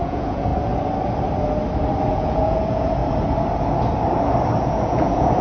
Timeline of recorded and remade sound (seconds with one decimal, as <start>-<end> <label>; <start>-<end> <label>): 0.0-0.5 remade; 0.5-2.1 recorded; 2.1-3.0 remade; 3.0-4.6 recorded; 4.6-5.4 remade